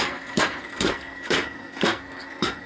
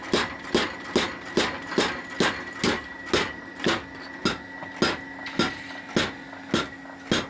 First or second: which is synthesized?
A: first